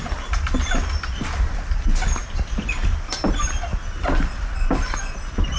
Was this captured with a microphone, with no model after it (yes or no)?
yes